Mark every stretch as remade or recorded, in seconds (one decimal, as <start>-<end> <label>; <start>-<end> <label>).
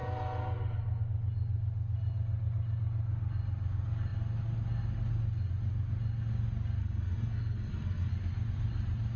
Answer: 0.0-6.8 recorded; 6.8-8.1 remade; 8.1-9.2 recorded